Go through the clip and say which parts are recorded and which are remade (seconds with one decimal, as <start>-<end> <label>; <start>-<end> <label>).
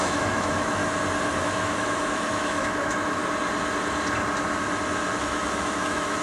0.0-0.8 remade; 0.8-1.4 recorded; 1.4-3.2 remade; 3.2-5.2 recorded; 5.2-6.2 remade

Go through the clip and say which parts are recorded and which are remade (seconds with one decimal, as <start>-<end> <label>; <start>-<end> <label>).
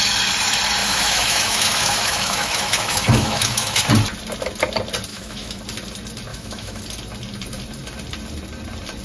0.0-0.8 recorded; 0.8-3.8 remade; 3.8-5.1 recorded; 5.1-5.6 remade; 5.6-6.3 recorded; 6.3-6.8 remade; 6.8-9.0 recorded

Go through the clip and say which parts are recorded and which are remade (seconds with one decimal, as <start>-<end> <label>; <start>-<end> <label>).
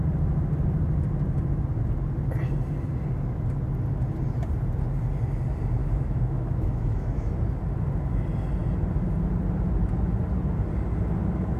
0.0-5.8 recorded; 5.8-7.3 remade; 7.3-11.6 recorded